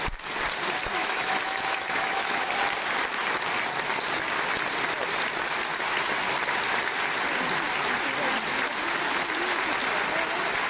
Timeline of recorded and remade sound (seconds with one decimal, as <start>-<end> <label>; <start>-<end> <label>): 0.0-1.0 recorded; 1.0-2.6 remade; 2.6-10.7 recorded